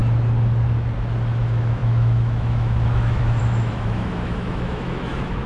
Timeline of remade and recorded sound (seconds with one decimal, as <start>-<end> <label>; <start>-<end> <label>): 0.0-1.4 recorded; 1.4-5.5 remade